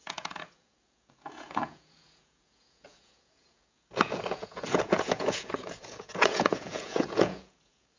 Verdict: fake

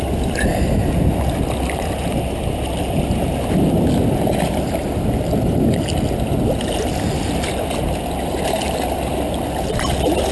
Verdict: real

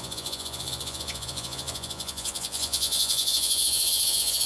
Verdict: fake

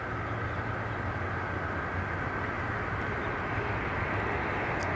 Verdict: real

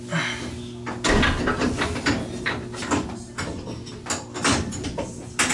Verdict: real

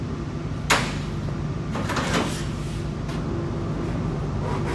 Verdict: real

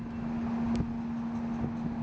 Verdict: real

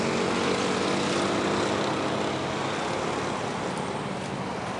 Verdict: real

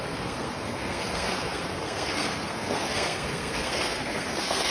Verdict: fake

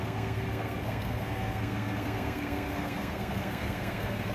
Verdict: fake